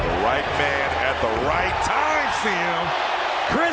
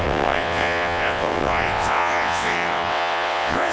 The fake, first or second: second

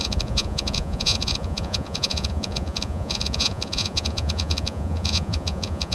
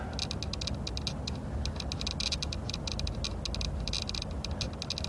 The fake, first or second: first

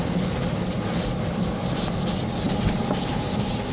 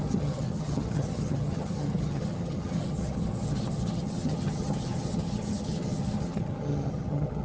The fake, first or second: second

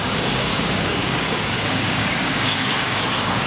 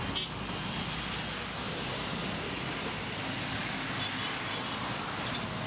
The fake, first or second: first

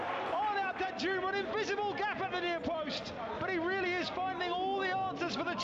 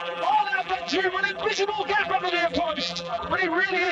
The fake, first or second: second